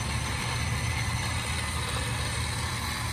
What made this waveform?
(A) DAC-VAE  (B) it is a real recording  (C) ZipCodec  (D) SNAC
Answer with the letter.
B